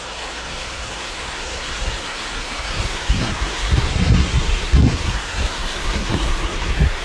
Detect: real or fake fake